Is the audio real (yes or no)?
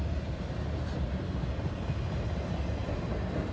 yes